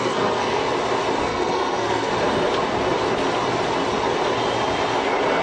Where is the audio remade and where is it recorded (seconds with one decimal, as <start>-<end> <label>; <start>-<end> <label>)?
0.0-0.6 remade; 0.6-1.2 recorded; 1.2-2.1 remade; 2.1-5.4 recorded